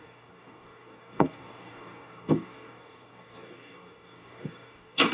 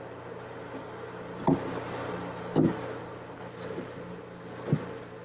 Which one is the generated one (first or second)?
first